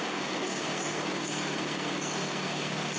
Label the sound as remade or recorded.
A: remade